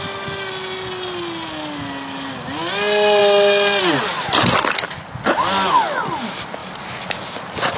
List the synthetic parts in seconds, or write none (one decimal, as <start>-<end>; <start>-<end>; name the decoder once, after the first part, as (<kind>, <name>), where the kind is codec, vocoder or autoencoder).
none